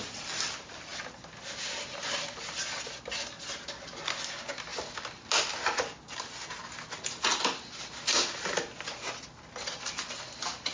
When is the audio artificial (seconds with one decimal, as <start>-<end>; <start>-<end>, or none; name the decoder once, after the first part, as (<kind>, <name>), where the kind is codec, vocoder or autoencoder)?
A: none